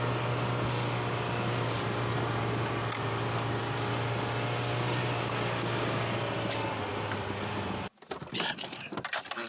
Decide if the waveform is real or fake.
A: real